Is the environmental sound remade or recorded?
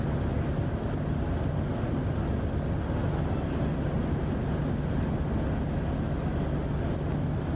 recorded